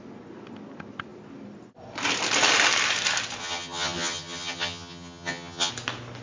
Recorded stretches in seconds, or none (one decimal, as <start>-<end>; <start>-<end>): 0.0-3.4; 5.7-6.2